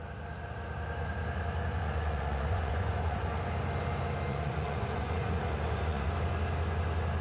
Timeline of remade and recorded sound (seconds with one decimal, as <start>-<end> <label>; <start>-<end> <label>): 0.0-1.8 recorded; 1.8-3.4 remade; 3.4-4.3 recorded; 4.3-6.1 remade; 6.1-7.2 recorded